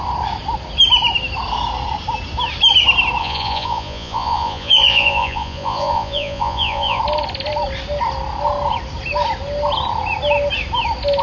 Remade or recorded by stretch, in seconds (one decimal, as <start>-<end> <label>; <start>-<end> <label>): 0.0-3.2 recorded; 3.2-7.0 remade; 7.0-11.2 recorded